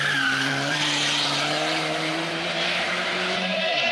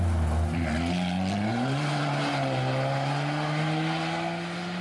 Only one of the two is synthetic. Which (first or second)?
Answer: first